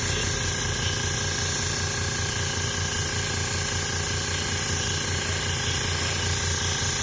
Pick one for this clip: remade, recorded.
recorded